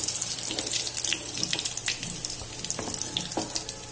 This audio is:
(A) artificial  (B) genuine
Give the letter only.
B